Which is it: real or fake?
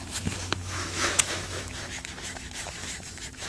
fake